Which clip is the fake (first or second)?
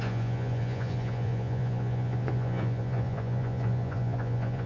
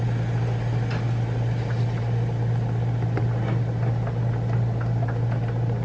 first